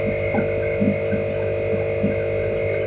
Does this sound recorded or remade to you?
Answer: recorded